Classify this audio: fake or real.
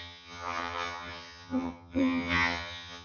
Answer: fake